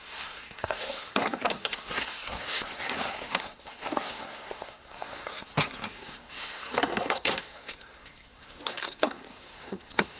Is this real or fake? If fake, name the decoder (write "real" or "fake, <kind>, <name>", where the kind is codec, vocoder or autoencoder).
fake, codec, SNAC